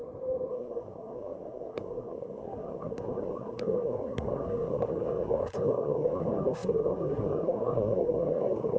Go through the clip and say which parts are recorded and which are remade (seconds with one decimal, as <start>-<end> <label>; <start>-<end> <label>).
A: 0.0-0.5 recorded; 0.5-8.8 remade